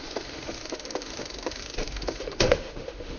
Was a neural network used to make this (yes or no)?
yes